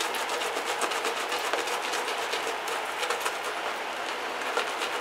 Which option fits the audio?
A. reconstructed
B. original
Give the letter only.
B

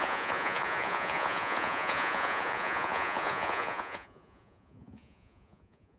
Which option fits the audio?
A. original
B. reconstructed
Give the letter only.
B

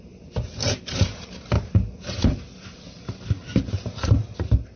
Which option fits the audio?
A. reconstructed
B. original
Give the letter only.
A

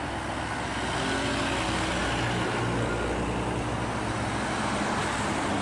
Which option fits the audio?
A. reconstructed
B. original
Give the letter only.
B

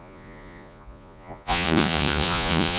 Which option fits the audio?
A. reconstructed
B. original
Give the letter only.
A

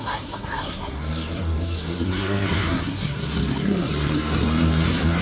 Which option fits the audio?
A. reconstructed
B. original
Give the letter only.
A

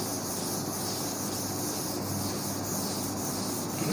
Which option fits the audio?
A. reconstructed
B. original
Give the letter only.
A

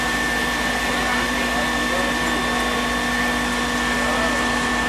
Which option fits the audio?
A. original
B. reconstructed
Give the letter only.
A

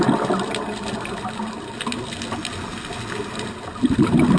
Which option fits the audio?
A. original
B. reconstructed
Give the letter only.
A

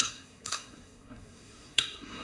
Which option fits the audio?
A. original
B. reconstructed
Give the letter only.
B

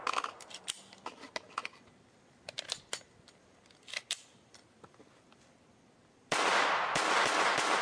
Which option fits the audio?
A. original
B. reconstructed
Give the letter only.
A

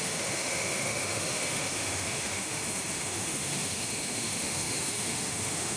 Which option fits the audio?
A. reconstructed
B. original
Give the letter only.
A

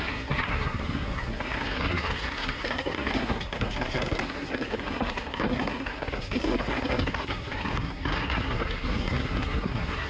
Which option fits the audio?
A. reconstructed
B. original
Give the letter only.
A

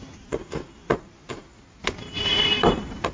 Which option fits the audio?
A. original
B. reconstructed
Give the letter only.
B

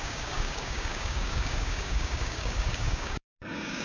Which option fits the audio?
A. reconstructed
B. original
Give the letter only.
A